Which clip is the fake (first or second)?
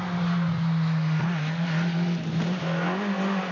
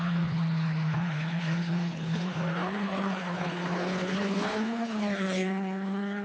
second